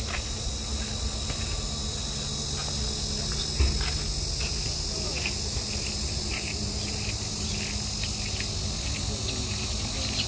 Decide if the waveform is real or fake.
real